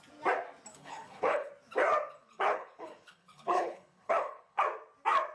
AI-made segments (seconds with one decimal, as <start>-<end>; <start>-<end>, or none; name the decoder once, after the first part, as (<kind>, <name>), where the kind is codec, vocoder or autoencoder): 0.7-1.5 (codec, HILCodec); 2.2-4.6